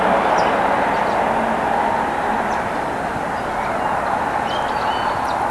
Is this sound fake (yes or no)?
no